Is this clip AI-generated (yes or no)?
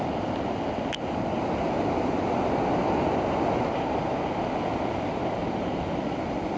no